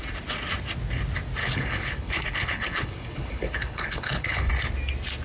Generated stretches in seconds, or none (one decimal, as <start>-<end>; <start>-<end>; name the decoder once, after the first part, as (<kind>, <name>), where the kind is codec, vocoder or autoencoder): 1.4-4.5 (codec, HILCodec)